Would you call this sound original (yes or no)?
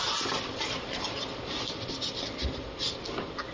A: yes